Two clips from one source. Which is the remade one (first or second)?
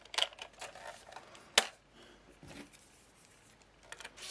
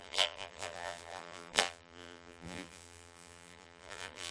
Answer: second